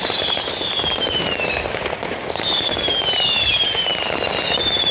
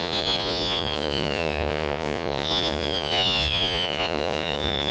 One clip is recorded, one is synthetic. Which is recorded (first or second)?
first